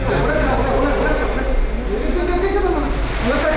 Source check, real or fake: real